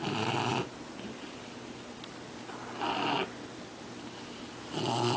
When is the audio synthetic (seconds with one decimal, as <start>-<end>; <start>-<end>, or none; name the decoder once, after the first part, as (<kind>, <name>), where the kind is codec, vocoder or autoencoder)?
none